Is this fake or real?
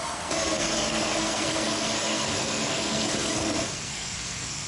fake